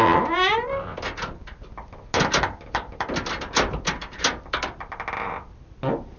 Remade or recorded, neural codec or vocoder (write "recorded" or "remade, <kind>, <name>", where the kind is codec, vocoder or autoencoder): recorded